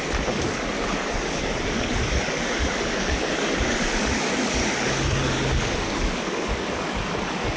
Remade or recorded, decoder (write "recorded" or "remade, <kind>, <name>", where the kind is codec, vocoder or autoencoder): remade, codec, DAC